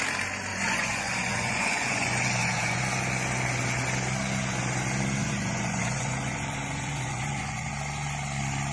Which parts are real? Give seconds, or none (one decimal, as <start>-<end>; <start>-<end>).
0.0-0.5; 2.8-5.2; 7.7-8.7